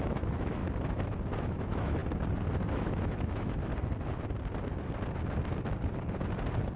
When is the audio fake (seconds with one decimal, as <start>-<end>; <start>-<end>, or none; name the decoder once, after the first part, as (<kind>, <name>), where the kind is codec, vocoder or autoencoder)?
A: 0.0-0.6 (autoencoder, DAC-VAE); 1.4-2.0; 2.7-3.7